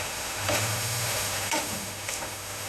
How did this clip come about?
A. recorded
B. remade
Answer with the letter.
B